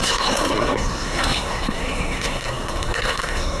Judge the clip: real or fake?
fake